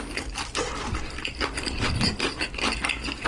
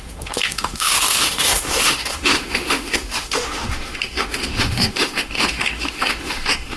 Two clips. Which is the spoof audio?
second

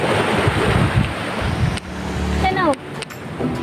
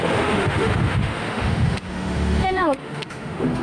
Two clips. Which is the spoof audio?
second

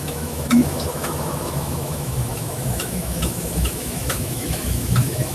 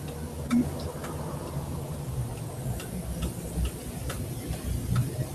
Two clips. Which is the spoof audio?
first